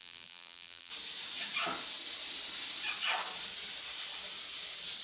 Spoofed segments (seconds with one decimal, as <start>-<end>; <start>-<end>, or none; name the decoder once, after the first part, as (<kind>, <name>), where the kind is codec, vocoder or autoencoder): 0.0-0.9 (vocoder, BigVGAN v2)